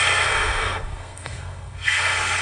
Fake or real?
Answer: fake